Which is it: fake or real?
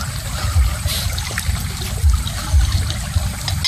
real